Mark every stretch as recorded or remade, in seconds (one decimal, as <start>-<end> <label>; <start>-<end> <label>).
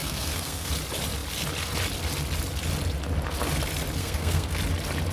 0.0-0.7 remade; 0.7-4.0 recorded; 4.0-4.6 remade; 4.6-5.1 recorded